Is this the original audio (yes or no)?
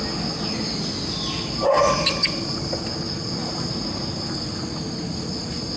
yes